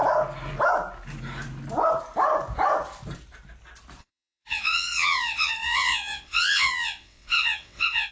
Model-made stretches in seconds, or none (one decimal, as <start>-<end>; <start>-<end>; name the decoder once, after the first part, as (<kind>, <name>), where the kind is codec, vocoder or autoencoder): 4.0-8.1 (vocoder, WaveNeXt)